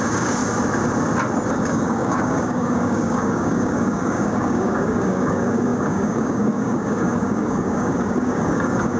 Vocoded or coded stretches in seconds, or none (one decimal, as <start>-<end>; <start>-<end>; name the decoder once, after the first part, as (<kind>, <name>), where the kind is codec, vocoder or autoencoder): 0.0-0.4 (codec, DAC); 1.5-9.0